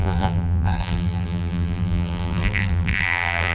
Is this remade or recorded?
remade